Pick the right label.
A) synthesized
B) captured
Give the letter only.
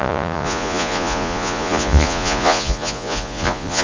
A